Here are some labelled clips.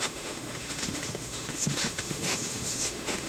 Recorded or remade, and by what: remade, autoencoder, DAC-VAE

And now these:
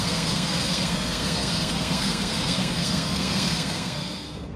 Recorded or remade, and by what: remade, codec, SNAC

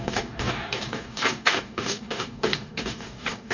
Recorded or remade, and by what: remade, codec, DAC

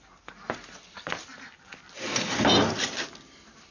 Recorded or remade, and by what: recorded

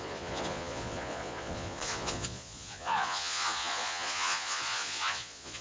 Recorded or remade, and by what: remade, vocoder, Vocos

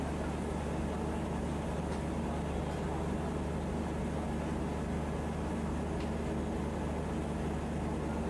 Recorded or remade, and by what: recorded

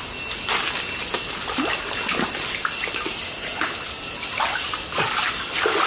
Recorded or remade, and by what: recorded